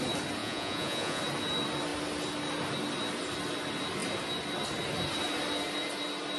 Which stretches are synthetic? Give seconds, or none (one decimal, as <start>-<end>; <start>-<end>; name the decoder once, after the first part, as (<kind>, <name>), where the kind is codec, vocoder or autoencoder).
0.4-1.2 (vocoder, Vocos)